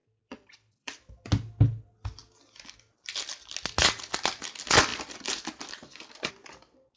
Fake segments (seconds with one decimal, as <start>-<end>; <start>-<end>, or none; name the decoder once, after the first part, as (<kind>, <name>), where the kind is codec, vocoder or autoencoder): 0.0-1.3 (vocoder, BigVGAN v2); 4.9-6.3